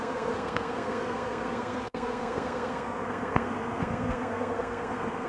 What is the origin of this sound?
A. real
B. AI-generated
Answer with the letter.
B